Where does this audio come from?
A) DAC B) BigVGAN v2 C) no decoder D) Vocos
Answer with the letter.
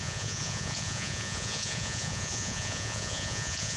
D